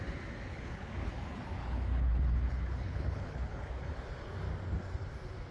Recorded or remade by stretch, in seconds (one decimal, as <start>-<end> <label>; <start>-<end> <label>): 0.0-0.5 recorded; 0.5-1.1 remade; 1.1-1.6 recorded; 1.6-4.0 remade; 4.0-5.5 recorded